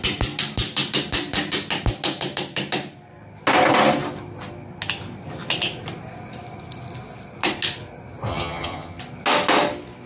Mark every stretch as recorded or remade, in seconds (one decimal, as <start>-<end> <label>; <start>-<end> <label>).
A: 0.0-8.3 recorded; 8.3-9.0 remade; 9.0-10.1 recorded